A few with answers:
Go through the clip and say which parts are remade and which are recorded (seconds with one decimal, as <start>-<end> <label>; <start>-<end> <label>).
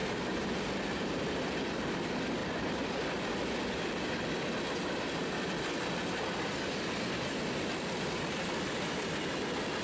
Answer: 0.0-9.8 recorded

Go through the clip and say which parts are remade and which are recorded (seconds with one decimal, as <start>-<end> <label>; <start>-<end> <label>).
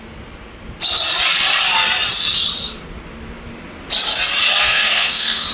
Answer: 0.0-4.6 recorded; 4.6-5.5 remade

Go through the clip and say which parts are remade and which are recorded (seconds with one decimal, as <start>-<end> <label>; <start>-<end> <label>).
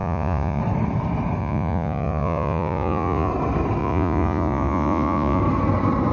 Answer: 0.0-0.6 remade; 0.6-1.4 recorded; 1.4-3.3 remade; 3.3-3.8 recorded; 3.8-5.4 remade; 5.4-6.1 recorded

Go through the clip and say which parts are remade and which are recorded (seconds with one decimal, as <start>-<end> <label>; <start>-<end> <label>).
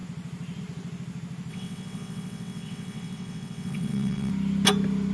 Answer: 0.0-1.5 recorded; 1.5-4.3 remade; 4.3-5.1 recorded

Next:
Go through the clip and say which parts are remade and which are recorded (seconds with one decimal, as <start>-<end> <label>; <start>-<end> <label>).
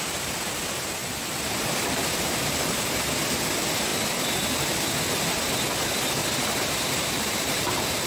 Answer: 0.0-1.0 recorded; 1.0-2.9 remade; 2.9-6.2 recorded; 6.2-8.1 remade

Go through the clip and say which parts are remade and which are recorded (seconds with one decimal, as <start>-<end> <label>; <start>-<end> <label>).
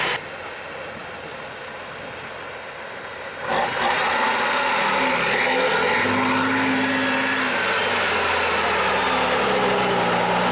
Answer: 0.0-10.5 recorded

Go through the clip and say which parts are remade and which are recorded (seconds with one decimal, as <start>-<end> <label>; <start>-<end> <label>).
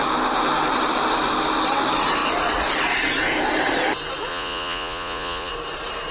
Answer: 0.0-4.3 recorded; 4.3-5.5 remade; 5.5-6.1 recorded